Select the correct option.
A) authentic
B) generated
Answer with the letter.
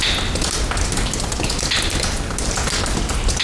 A